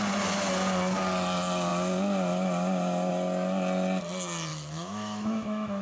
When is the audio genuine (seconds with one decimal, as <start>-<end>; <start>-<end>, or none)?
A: 0.0-4.5